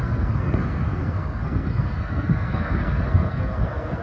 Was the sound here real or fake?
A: fake